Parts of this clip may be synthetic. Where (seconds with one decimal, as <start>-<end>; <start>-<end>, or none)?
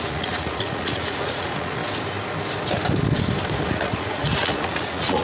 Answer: 0.0-1.8; 3.7-5.2